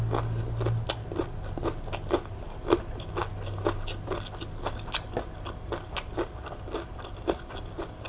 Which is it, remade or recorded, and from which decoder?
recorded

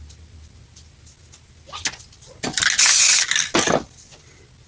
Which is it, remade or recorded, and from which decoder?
recorded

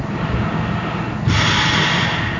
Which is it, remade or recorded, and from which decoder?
recorded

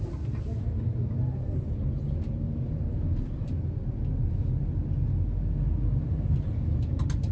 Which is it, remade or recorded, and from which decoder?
recorded